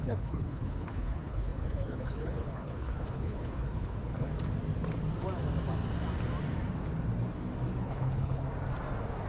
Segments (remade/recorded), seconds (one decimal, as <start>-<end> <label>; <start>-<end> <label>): 0.0-4.3 remade; 4.3-7.8 recorded; 7.8-8.4 remade; 8.4-9.3 recorded